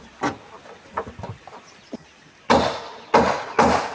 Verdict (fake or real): real